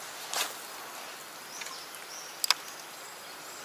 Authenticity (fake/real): real